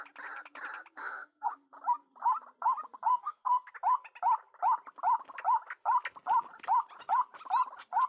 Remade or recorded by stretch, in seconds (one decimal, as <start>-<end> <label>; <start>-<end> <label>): 0.0-1.0 recorded; 1.0-1.5 remade; 1.5-3.1 recorded; 3.1-3.7 remade; 3.7-8.1 recorded